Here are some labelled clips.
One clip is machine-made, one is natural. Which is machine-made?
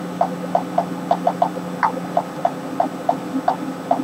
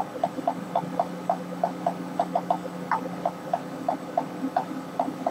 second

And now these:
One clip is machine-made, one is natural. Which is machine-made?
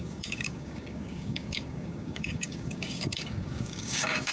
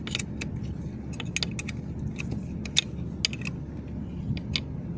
first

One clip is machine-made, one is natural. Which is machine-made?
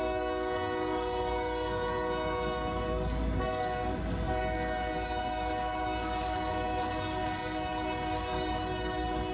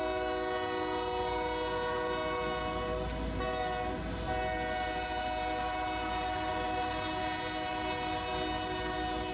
first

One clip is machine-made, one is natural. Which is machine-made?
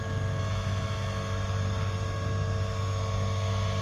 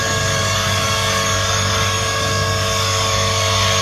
second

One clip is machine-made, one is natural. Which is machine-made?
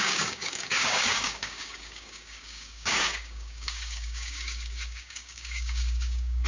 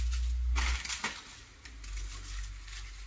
first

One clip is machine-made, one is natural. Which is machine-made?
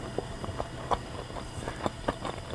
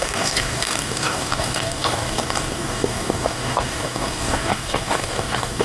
second